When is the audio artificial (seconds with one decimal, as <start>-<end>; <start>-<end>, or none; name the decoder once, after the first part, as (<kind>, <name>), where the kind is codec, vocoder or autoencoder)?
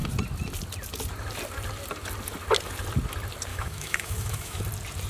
3.5-4.6 (autoencoder, DAC-VAE)